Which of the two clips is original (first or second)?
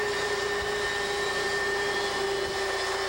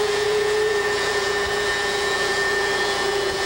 first